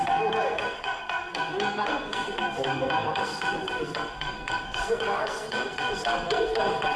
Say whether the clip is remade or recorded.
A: remade